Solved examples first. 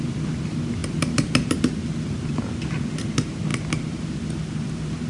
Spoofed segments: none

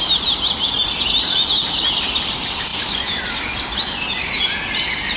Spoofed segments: none

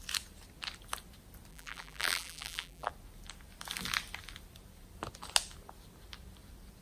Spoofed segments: 1.5-2.9 (vocoder, BigVGAN v2)